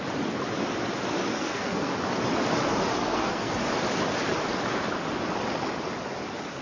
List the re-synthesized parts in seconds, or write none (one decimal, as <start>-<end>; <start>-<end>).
1.3-1.9; 3.0-3.5